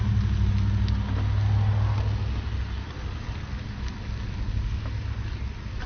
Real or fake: real